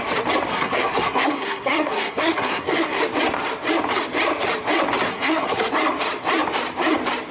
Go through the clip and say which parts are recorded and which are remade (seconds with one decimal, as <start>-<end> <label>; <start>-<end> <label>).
0.0-0.5 recorded; 0.5-3.0 remade; 3.0-5.1 recorded; 5.1-5.7 remade; 5.7-7.3 recorded